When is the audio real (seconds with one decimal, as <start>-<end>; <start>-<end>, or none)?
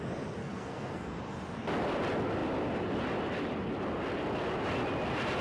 0.0-0.4; 1.2-5.4